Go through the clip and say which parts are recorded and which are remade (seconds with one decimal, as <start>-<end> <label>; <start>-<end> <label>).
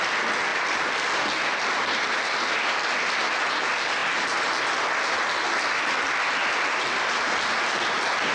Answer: 0.0-0.5 recorded; 0.5-3.5 remade; 3.5-8.3 recorded